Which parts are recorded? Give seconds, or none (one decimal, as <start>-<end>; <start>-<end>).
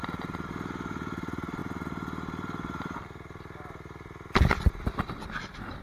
0.0-5.8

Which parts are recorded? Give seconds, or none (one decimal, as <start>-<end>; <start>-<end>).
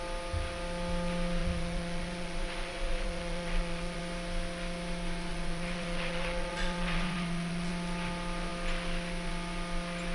0.0-1.4; 4.0-5.3; 7.7-10.1